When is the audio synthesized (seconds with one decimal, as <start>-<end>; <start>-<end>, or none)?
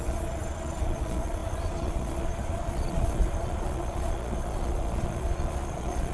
0.0-6.1